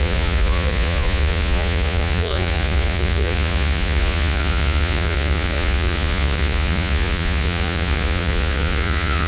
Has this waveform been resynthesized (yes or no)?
yes